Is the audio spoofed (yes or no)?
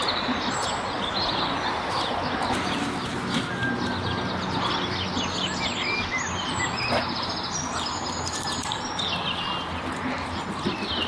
no